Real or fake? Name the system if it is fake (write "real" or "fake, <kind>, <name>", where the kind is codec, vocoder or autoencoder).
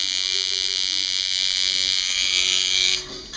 real